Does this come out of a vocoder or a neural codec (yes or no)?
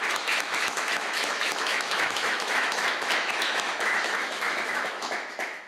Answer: yes